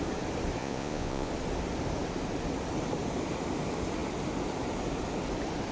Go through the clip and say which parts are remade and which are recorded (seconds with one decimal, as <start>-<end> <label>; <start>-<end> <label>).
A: 0.0-0.6 recorded; 0.6-1.3 remade; 1.3-5.7 recorded